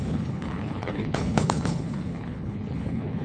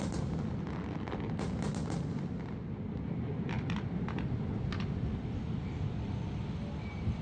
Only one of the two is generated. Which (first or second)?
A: first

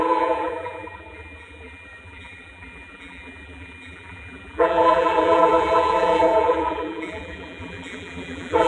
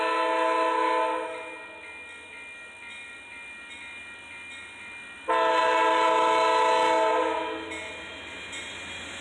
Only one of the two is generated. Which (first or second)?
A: first